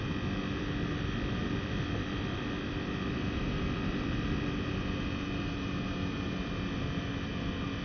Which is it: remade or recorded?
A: recorded